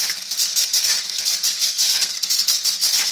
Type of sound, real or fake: fake